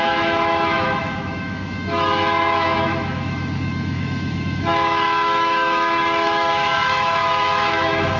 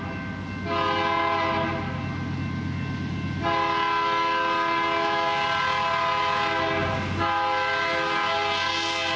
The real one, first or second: second